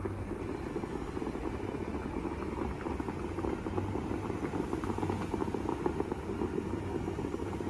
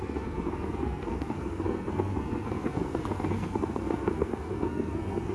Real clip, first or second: first